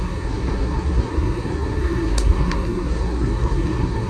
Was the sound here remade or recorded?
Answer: remade